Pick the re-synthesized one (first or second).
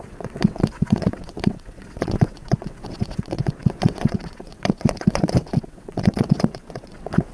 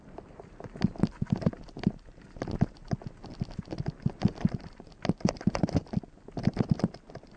first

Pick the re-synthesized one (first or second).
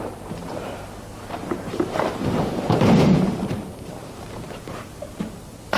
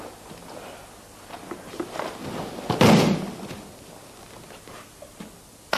first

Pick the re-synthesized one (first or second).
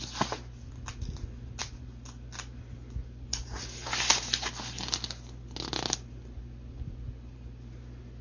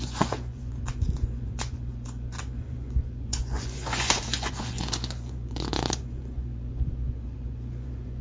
second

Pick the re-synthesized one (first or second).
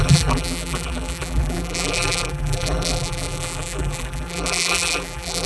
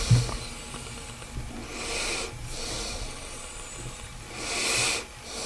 first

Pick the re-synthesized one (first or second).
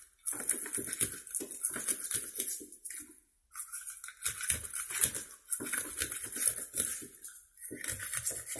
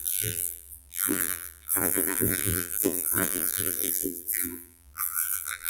second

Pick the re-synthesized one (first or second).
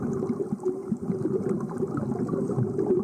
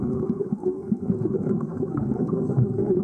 second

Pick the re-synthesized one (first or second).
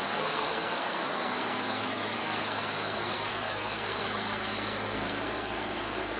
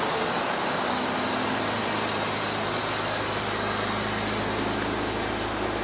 first